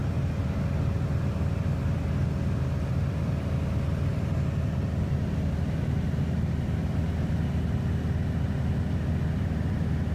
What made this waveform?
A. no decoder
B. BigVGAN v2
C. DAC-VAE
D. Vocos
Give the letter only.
A